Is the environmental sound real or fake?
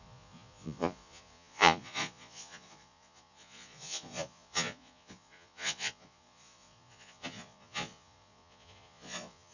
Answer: fake